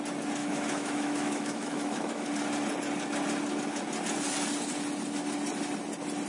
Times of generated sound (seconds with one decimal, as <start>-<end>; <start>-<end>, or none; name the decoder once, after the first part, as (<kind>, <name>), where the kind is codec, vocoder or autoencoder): 0.4-2.3 (autoencoder, DAC-VAE)